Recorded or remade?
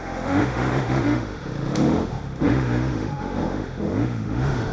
remade